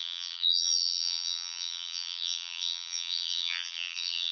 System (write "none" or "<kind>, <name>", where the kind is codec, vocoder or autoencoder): vocoder, BigVGAN v2